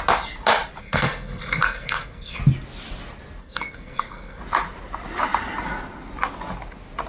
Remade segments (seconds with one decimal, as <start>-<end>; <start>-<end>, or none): 0.8-2.4; 3.4-4.4